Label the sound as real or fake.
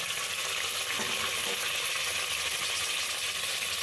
real